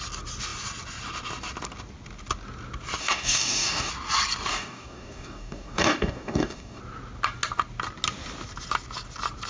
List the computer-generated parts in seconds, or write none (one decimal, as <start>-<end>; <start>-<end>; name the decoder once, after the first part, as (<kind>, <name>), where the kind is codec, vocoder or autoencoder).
3.0-3.9 (codec, DAC); 4.5-6.8